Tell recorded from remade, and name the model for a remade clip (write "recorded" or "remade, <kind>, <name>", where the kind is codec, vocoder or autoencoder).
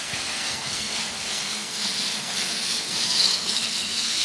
remade, codec, SNAC